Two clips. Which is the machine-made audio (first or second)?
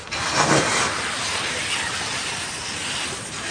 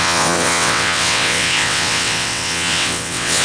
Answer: second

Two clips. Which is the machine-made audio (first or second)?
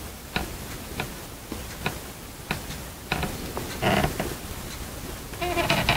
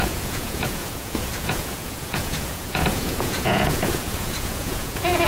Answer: second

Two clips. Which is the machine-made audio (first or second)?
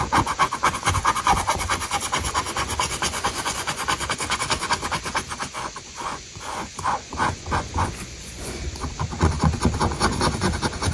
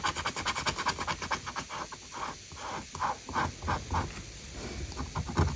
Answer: first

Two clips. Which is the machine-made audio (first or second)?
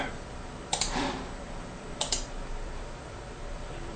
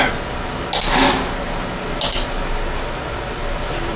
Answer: first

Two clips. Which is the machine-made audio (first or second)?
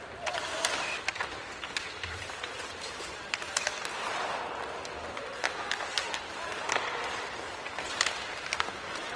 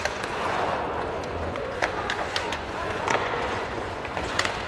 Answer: second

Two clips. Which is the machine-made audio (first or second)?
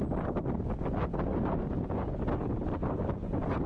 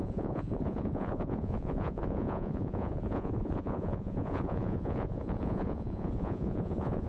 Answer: second